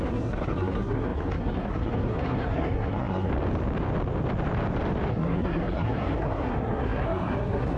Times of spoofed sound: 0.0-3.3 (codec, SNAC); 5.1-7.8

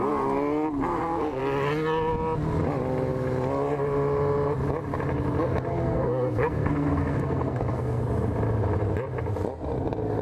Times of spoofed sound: 0.9-1.4 (codec, SNAC); 5.7-8.0

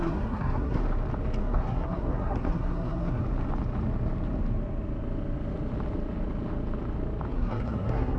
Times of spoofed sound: 0.0-0.8 (codec, SNAC); 1.4-3.2; 7.3-8.2

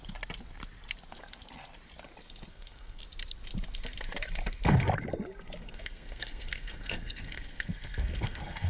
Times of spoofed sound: 2.5-3.0 (codec, SNAC); 5.6-8.7

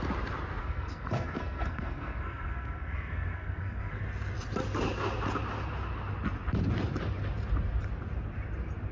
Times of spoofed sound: 0.6-4.0 (codec, SNAC)

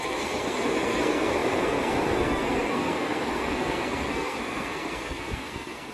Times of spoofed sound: 0.0-5.9 (codec, SNAC)